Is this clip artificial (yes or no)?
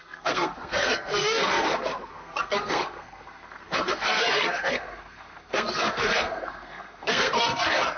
yes